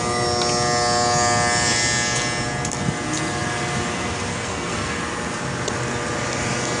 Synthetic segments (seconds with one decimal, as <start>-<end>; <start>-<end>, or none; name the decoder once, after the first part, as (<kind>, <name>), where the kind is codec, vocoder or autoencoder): 4.3-5.0 (codec, SNAC)